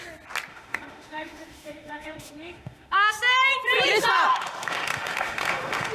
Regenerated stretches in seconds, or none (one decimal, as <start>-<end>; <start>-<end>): 0.5-3.1; 4.3-5.9